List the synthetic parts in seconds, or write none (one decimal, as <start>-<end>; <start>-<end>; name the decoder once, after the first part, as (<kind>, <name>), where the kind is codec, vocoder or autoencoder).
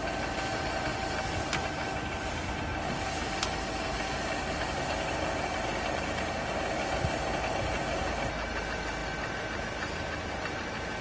none